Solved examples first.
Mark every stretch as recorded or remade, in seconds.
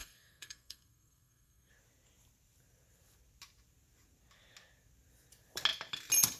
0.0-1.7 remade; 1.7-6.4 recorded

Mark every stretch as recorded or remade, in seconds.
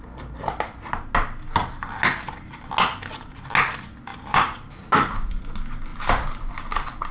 0.0-4.1 recorded; 4.1-4.8 remade; 4.8-5.9 recorded; 5.9-6.5 remade; 6.5-7.1 recorded